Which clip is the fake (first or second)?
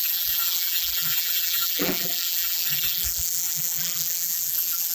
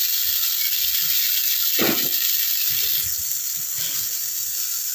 first